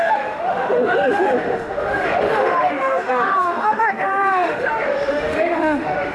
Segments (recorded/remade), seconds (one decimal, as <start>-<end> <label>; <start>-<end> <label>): 0.0-6.1 remade